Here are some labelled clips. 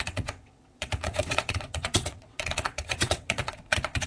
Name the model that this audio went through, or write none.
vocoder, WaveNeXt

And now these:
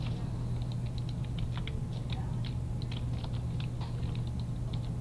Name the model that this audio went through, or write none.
none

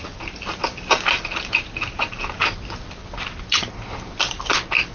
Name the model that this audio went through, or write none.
none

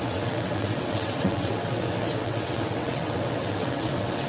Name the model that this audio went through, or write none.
vocoder, WaveNeXt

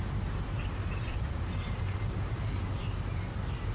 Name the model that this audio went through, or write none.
none